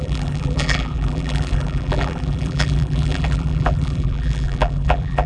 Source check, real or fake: fake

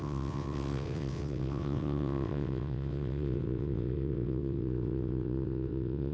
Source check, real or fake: fake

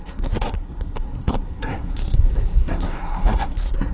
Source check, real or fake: fake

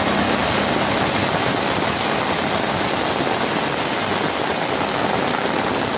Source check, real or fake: real